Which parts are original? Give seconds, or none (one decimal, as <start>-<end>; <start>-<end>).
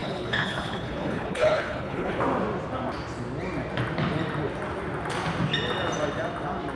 2.2-6.8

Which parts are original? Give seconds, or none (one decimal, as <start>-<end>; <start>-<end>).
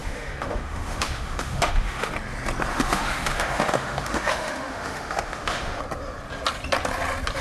2.1-2.7; 5.8-7.4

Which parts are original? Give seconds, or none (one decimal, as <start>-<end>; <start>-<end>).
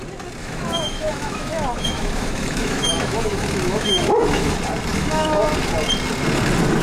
0.0-0.4; 4.5-4.9; 5.4-6.8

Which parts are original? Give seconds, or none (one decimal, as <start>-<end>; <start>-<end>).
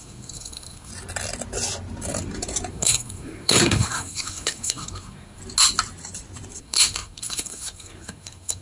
0.9-2.7; 5.4-6.6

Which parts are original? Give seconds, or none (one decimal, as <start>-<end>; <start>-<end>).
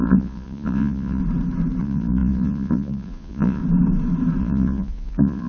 1.2-1.8; 3.6-4.4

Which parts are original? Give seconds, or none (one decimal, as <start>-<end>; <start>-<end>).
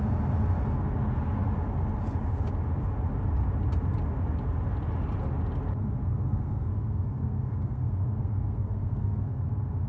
0.0-6.0; 9.5-9.9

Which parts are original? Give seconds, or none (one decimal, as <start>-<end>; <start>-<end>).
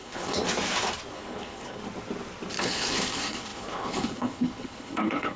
0.4-1.1; 1.8-2.6